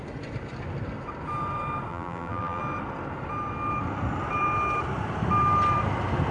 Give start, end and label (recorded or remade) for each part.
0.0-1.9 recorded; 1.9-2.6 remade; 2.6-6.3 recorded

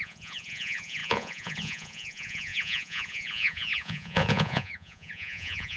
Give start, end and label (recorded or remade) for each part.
0.0-5.8 remade

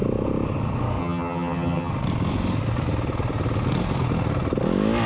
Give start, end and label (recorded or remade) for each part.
0.0-1.0 recorded; 1.0-1.9 remade; 1.9-5.1 recorded

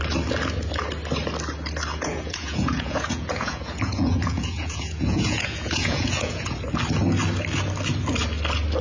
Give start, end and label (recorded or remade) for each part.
0.0-1.9 recorded; 1.9-6.5 remade; 6.5-8.8 recorded

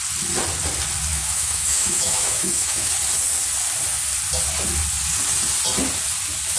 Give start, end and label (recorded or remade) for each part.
0.0-1.1 recorded; 1.1-2.9 remade; 2.9-6.6 recorded

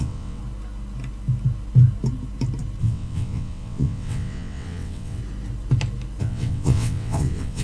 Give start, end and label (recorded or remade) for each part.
0.0-0.4 remade; 0.4-2.8 recorded; 2.8-5.2 remade; 5.2-6.2 recorded; 6.2-7.6 remade

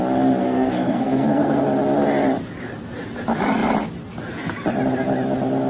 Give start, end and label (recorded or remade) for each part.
0.0-0.4 recorded; 0.4-1.6 remade; 1.6-5.7 recorded